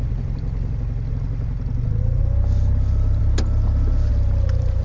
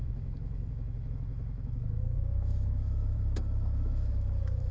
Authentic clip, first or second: first